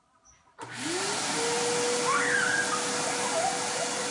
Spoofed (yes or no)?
no